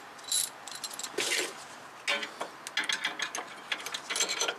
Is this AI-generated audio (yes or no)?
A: no